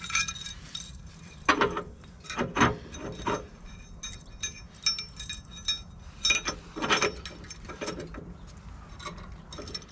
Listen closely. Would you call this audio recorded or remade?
recorded